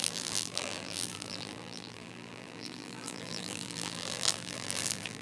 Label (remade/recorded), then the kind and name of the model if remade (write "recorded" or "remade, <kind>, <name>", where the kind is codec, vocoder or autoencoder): remade, vocoder, BigVGAN v2